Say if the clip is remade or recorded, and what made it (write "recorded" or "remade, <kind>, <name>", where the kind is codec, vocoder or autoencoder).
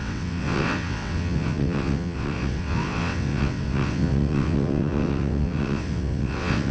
remade, vocoder, WaveNeXt